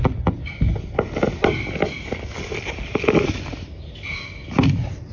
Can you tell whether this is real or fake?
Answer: real